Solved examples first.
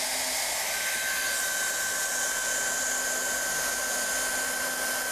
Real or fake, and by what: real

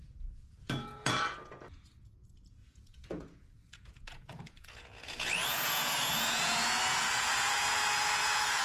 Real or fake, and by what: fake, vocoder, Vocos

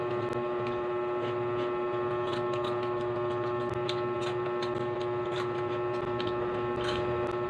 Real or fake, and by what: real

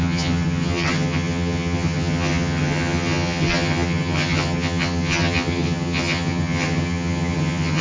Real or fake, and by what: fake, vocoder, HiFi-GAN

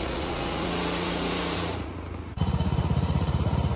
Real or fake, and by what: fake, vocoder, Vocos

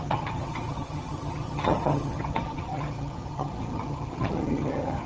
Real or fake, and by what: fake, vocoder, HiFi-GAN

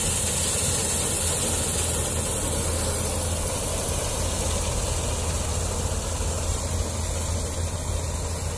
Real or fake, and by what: real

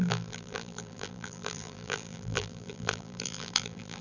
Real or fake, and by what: fake, vocoder, BigVGAN v2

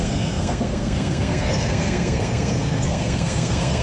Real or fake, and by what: fake, codec, SNAC